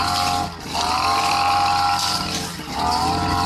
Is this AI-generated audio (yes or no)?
yes